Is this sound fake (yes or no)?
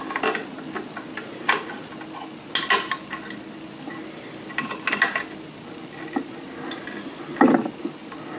no